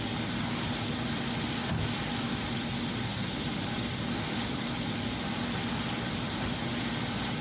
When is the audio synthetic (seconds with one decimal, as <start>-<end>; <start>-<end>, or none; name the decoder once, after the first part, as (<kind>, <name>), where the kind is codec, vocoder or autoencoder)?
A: none